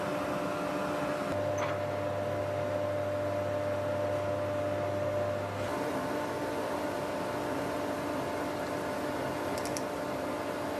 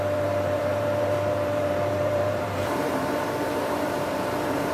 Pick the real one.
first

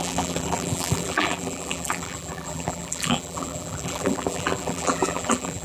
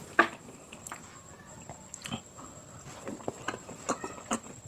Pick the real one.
second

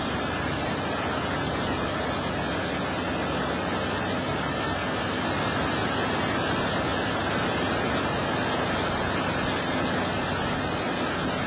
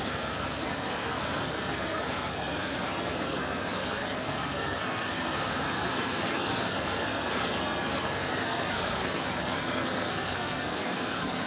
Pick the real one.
first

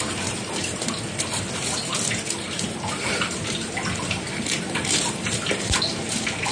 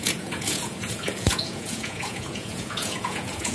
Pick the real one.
first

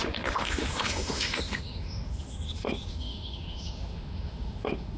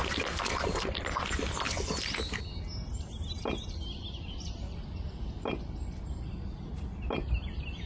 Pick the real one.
second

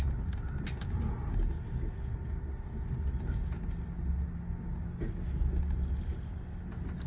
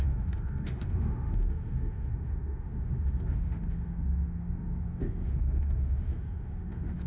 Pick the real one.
first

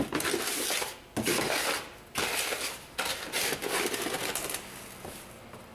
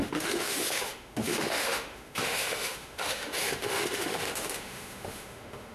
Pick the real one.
first